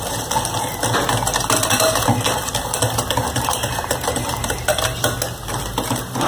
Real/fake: real